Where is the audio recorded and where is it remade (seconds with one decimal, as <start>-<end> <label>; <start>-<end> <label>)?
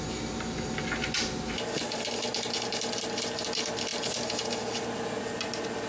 0.0-1.0 recorded; 1.0-2.9 remade; 2.9-5.9 recorded